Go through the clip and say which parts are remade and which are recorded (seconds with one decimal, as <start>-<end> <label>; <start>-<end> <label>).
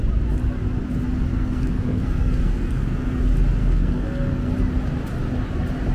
0.0-1.3 recorded; 1.3-3.2 remade; 3.2-3.6 recorded; 3.6-4.5 remade; 4.5-5.9 recorded